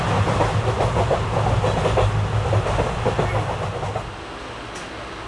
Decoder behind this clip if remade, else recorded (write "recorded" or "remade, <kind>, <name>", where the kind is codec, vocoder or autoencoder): recorded